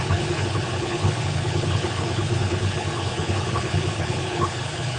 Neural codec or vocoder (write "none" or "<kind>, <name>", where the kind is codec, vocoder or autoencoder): codec, HILCodec